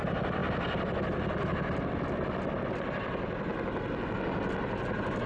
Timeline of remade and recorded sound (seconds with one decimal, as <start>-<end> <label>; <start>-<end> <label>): 0.0-5.3 recorded